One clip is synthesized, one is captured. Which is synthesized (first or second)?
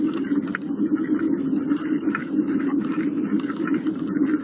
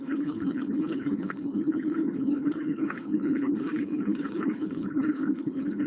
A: second